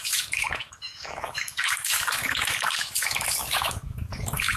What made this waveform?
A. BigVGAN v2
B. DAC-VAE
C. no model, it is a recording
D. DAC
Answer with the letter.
B